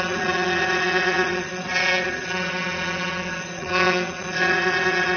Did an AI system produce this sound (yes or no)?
yes